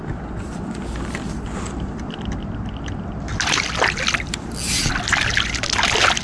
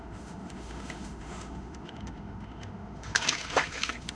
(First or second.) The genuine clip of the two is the first